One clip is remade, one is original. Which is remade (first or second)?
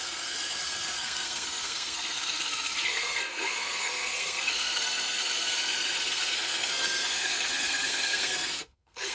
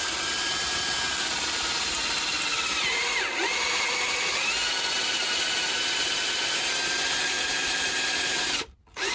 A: first